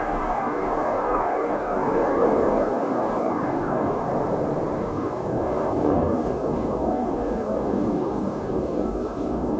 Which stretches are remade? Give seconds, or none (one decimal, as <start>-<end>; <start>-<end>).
0.0-4.1; 4.8-9.6